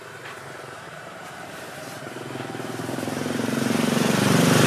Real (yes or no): no